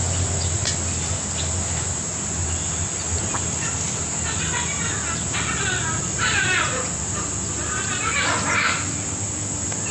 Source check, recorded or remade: recorded